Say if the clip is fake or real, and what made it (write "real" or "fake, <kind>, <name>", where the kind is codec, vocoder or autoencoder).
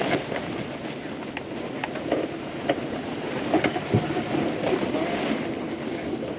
real